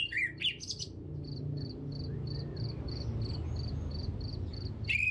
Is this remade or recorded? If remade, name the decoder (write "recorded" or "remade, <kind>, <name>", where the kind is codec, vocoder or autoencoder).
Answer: recorded